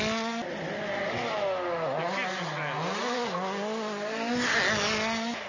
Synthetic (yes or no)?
no